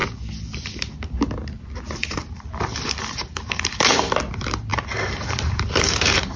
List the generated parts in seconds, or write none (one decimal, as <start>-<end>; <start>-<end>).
2.0-4.2; 4.7-6.4